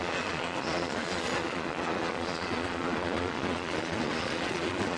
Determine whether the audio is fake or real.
fake